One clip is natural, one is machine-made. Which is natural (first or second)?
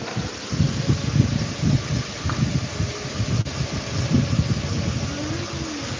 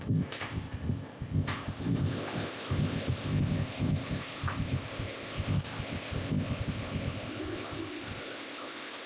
first